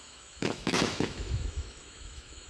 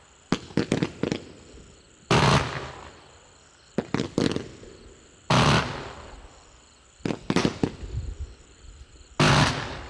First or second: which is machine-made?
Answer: first